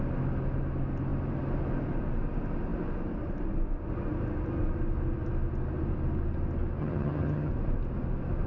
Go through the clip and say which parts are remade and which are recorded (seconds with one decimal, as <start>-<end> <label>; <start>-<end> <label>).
0.0-6.8 recorded; 6.8-7.5 remade; 7.5-8.5 recorded